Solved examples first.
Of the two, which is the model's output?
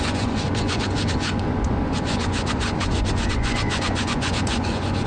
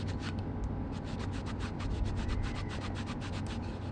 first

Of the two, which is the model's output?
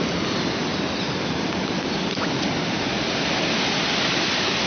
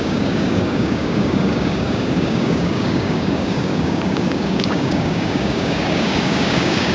second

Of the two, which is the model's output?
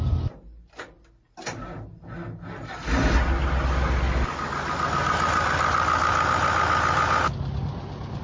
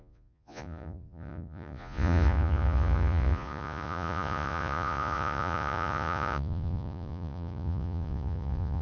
second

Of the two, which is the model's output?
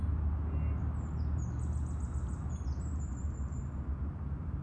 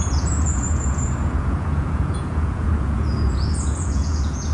second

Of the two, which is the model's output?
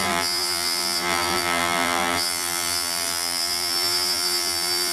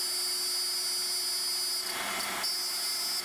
first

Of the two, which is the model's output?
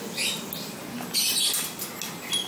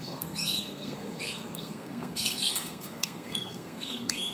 second